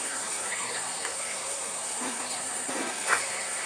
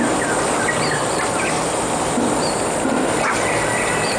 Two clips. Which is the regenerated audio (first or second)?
first